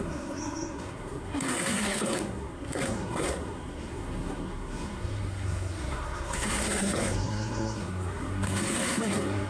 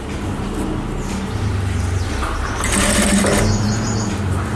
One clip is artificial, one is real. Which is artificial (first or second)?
first